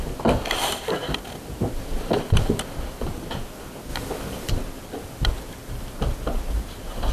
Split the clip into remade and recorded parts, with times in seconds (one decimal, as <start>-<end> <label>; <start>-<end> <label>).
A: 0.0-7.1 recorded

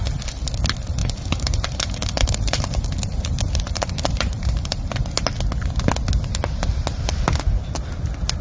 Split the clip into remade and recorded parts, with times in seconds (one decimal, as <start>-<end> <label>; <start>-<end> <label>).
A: 0.0-1.0 recorded; 1.0-4.9 remade; 4.9-8.4 recorded

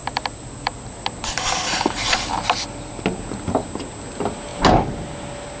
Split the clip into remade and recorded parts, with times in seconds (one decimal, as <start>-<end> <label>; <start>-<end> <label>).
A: 0.0-2.9 remade; 2.9-5.6 recorded

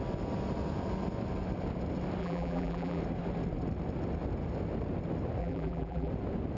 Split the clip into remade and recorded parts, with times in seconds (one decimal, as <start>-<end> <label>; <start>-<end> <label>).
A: 0.0-2.2 recorded; 2.2-3.0 remade; 3.0-5.4 recorded; 5.4-6.1 remade; 6.1-6.6 recorded

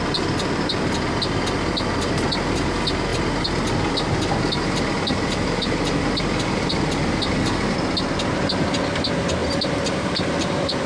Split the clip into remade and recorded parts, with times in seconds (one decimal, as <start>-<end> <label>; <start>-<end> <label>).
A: 0.0-9.4 recorded; 9.4-10.9 remade

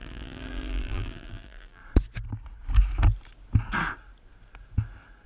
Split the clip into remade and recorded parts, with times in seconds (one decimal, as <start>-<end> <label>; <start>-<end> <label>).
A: 0.0-1.8 remade; 1.8-5.3 recorded